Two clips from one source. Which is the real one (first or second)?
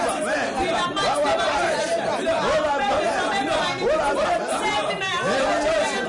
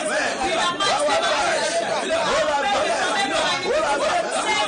first